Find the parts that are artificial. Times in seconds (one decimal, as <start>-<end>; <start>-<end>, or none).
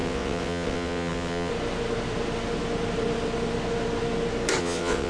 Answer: 0.0-1.5; 4.6-5.1